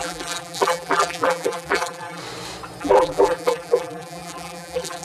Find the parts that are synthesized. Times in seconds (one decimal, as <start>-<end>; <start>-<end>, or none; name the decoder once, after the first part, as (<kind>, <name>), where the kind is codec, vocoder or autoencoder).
0.0-2.2 (vocoder, BigVGAN v2); 2.8-5.0

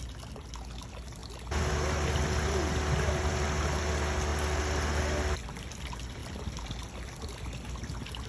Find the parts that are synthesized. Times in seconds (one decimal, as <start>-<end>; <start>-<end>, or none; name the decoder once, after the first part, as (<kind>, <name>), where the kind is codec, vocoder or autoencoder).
none